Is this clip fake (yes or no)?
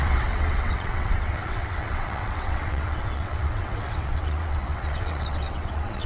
yes